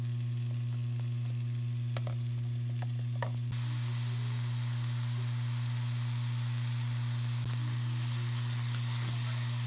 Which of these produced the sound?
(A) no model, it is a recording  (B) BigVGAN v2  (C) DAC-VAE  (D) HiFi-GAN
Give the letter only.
A